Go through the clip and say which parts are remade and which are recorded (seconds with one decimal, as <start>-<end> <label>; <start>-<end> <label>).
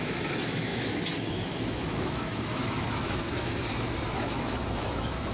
0.0-5.3 remade